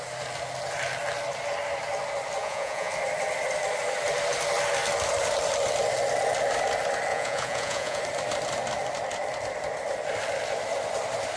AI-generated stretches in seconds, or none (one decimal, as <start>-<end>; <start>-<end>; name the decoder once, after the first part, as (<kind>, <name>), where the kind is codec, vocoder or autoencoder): 2.4-2.9 (vocoder, Vocos); 7.1-8.0